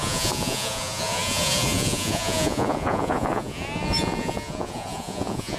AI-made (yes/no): yes